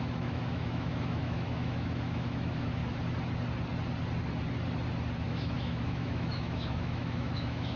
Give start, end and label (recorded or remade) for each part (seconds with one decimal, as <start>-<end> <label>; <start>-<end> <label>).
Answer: 0.0-2.8 remade; 2.8-5.2 recorded; 5.2-7.8 remade